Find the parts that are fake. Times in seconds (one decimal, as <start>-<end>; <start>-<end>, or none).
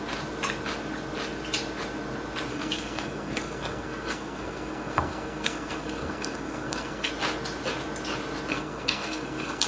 2.5-7.1; 8.5-9.7